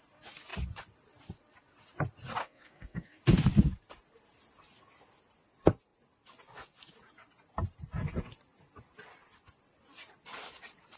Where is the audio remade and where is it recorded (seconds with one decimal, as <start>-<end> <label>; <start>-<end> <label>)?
0.0-2.4 recorded; 2.4-3.2 remade; 3.2-11.0 recorded